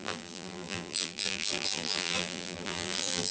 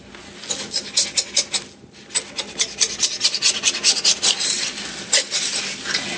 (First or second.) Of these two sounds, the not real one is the first